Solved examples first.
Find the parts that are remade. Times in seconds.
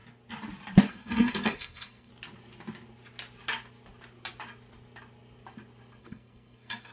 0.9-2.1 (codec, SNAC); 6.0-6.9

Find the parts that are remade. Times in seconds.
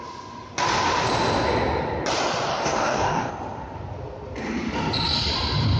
2.5-3.3 (codec, DAC)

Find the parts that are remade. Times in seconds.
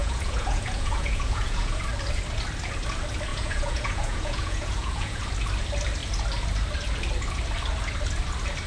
0.0-1.8 (vocoder, Vocos); 3.3-5.2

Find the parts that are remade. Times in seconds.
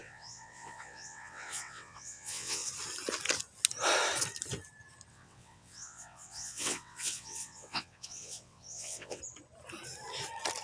0.0-2.7 (vocoder, WaveNeXt); 5.1-9.2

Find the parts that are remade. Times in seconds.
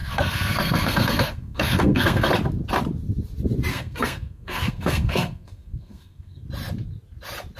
0.0-2.3 (codec, SNAC); 3.7-6.4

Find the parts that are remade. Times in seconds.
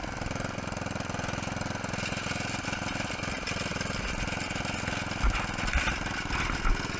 none